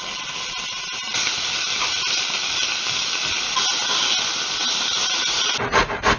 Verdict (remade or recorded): recorded